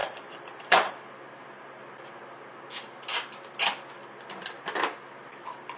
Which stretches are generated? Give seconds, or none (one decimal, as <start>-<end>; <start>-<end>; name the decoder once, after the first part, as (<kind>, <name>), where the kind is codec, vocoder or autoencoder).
0.0-1.6 (vocoder, BigVGAN v2)